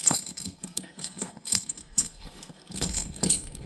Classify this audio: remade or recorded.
remade